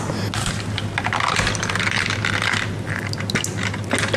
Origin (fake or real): real